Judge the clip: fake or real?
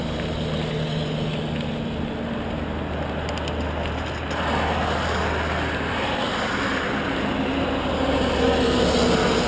real